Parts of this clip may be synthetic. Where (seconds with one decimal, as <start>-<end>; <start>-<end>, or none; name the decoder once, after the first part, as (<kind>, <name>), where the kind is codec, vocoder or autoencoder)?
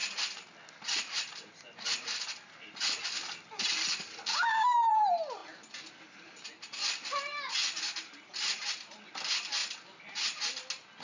4.3-4.9 (codec, DAC)